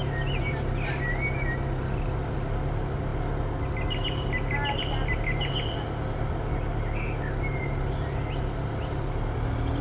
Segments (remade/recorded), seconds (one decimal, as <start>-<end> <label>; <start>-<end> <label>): 0.0-9.8 recorded